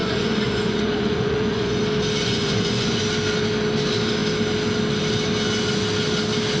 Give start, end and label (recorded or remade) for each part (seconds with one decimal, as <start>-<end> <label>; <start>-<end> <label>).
0.0-1.8 remade; 1.8-2.2 recorded; 2.2-3.0 remade; 3.0-6.6 recorded